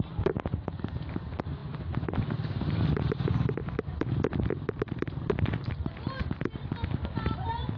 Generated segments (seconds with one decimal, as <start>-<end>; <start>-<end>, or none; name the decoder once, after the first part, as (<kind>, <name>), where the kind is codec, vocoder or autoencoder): none